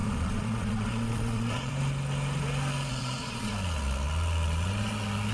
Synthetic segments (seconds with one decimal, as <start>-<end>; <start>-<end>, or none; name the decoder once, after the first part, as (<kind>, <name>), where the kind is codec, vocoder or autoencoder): 0.0-1.7 (vocoder, Vocos); 2.9-3.5